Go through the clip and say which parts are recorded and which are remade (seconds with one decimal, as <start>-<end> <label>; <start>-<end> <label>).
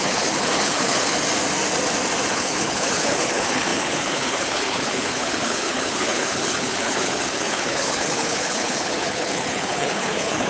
0.0-1.1 remade; 1.1-2.3 recorded; 2.3-10.5 remade